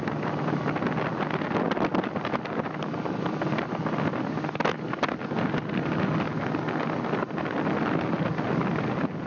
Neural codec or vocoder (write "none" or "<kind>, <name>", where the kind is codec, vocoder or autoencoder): none